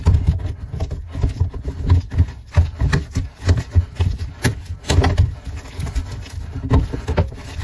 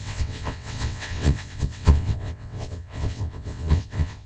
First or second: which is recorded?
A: first